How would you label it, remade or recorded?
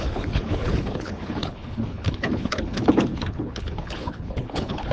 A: remade